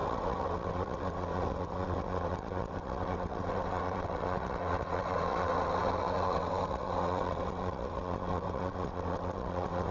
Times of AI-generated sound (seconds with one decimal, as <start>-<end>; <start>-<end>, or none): 0.0-9.9